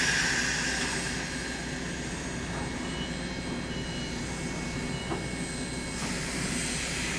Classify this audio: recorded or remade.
recorded